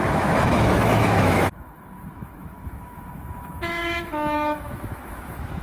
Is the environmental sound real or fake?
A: fake